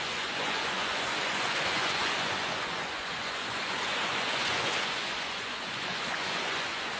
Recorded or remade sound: remade